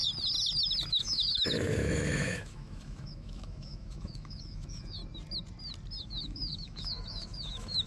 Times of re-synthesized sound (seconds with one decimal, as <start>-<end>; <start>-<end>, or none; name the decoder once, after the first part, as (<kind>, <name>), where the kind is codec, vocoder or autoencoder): 0.9-5.0 (autoencoder, DAC-VAE); 6.0-7.9